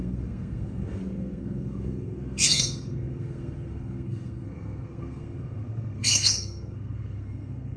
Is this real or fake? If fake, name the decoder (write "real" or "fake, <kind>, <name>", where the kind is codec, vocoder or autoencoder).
fake, codec, SNAC